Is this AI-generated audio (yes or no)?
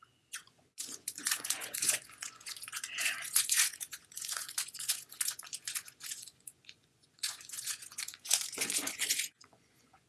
yes